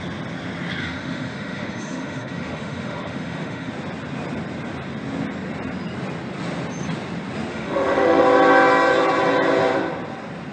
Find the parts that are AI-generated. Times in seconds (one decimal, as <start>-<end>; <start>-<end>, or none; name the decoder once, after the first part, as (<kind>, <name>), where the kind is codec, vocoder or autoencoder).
0.8-3.7 (autoencoder, DAC-VAE); 7.5-8.2